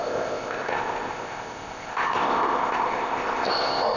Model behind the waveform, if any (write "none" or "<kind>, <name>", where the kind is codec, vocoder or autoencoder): codec, ZipCodec